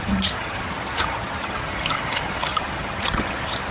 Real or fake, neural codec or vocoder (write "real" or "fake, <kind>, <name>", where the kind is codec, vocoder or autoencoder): fake, vocoder, HiFi-GAN